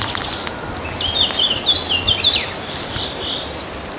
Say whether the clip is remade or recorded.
recorded